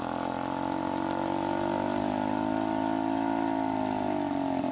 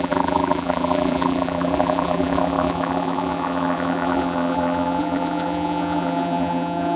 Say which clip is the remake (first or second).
second